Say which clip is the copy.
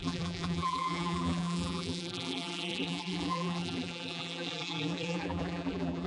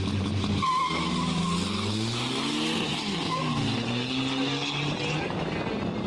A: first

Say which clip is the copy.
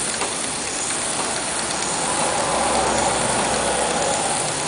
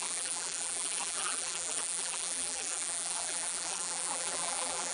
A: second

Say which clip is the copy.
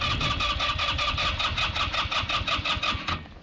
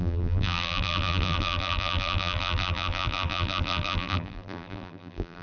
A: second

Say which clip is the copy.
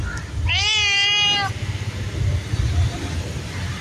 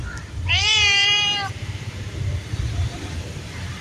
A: second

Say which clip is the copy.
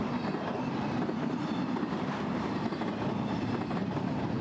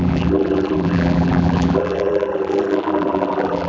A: second